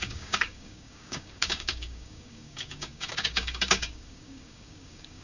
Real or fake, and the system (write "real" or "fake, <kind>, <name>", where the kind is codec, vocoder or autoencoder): fake, codec, DAC